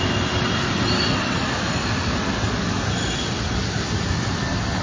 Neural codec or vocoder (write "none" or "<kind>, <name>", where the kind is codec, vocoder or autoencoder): vocoder, BigVGAN v2